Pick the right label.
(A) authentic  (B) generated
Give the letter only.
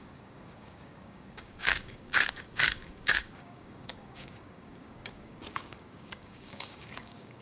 B